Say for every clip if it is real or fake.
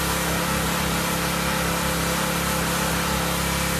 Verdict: real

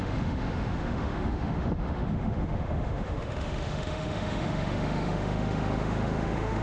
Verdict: fake